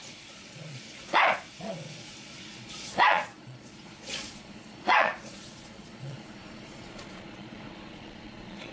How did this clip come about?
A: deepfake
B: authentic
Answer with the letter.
A